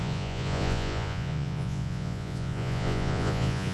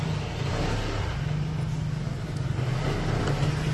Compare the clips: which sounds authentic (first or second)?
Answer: second